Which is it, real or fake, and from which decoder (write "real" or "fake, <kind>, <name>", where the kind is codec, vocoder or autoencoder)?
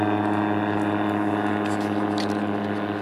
real